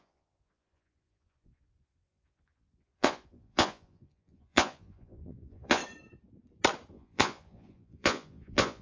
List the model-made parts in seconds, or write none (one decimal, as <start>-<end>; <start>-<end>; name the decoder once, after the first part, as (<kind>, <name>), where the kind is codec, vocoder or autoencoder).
0.0-5.8 (vocoder, Vocos); 6.9-8.8